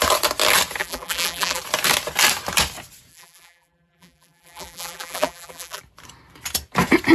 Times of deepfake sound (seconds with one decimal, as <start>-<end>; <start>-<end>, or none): 0.8-1.6; 3.1-5.8